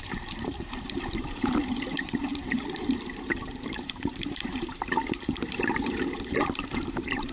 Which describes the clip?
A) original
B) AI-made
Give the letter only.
B